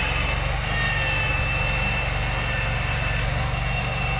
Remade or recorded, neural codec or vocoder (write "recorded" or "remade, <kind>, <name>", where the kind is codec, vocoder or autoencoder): recorded